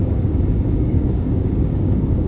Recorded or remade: remade